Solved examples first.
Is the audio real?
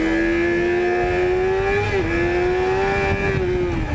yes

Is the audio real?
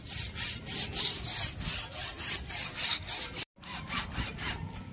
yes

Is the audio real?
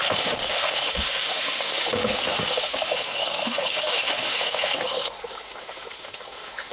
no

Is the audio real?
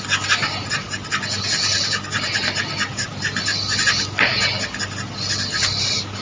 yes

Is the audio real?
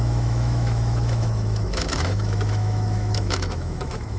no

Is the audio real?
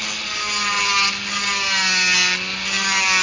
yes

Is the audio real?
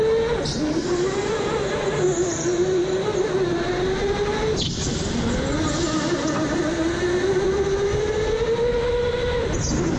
yes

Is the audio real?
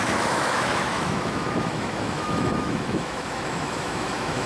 no